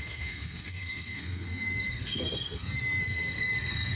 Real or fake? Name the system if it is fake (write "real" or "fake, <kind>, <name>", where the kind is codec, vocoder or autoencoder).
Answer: fake, codec, SNAC